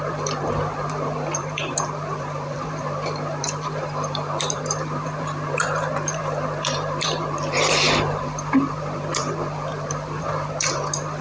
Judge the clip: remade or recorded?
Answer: remade